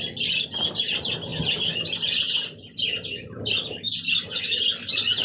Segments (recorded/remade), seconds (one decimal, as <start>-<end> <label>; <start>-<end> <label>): 0.0-5.2 recorded